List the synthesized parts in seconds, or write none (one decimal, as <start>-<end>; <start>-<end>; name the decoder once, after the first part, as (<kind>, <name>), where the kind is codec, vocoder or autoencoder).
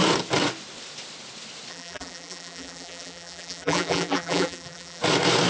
1.7-5.0 (vocoder, BigVGAN v2)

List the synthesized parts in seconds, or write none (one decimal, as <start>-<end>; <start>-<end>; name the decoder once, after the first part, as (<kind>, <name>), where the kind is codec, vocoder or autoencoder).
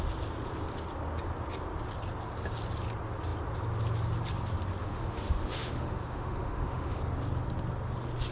4.8-7.0 (autoencoder, DAC-VAE)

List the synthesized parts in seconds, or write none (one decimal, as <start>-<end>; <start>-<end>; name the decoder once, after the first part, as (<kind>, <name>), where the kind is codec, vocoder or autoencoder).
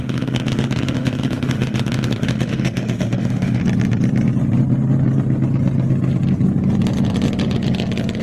0.0-3.6 (autoencoder, DAC-VAE)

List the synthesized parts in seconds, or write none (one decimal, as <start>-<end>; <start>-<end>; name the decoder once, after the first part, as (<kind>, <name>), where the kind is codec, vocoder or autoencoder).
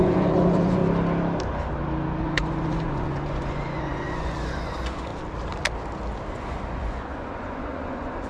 0.0-0.8 (vocoder, Vocos); 2.2-5.1; 6.3-8.3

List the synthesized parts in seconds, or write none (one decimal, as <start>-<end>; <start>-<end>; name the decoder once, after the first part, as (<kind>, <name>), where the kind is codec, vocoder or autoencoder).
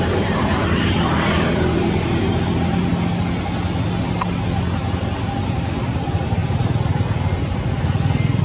0.0-2.9 (vocoder, BigVGAN v2); 5.0-6.4